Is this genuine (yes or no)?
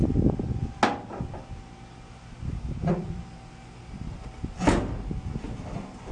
yes